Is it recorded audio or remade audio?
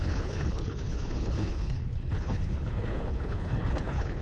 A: remade